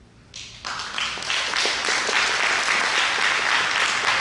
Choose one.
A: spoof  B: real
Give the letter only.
B